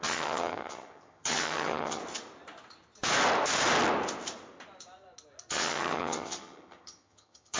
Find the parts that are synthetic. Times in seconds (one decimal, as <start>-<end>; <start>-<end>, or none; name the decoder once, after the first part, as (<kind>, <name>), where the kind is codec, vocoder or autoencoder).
0.0-2.0 (vocoder, HiFi-GAN); 5.5-7.6